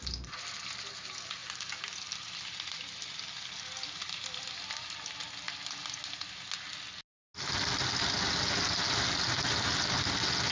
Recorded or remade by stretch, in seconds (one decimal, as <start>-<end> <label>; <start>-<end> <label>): 0.0-10.5 recorded